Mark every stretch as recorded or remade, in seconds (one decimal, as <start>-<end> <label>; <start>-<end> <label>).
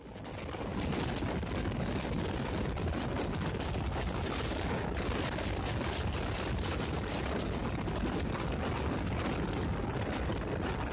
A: 0.0-10.9 recorded